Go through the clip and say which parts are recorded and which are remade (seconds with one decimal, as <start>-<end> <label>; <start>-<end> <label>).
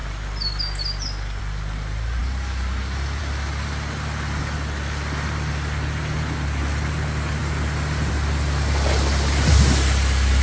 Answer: 0.0-10.4 recorded